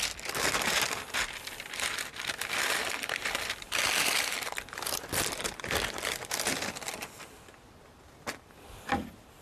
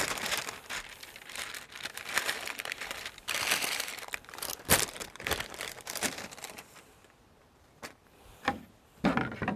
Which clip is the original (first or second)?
first